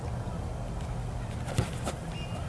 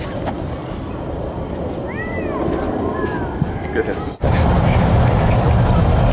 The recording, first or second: first